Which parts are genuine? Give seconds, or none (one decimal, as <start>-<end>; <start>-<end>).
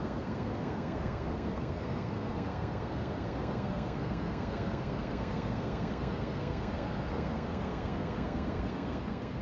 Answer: none